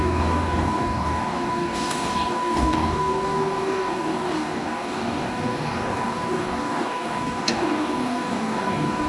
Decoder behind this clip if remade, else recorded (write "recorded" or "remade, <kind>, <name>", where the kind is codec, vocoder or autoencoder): remade, codec, DAC